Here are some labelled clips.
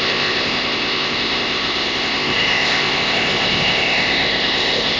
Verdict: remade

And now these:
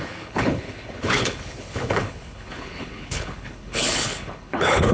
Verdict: remade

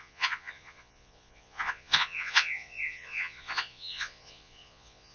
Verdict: remade